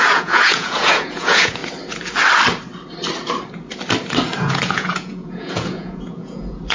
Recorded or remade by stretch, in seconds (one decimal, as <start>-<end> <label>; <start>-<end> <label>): 0.0-1.6 remade; 1.6-4.4 recorded; 4.4-6.7 remade